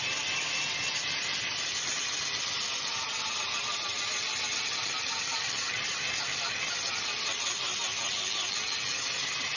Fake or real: real